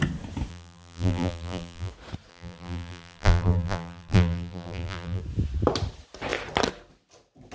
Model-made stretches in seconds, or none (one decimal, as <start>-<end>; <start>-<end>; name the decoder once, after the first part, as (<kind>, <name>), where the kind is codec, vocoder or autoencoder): 0.5-1.9 (vocoder, BigVGAN v2); 2.3-5.2